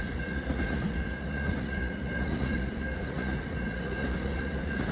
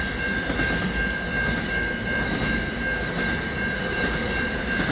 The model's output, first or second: first